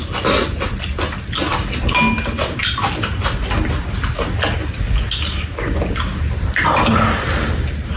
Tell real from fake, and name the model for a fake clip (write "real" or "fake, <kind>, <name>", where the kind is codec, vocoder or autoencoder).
real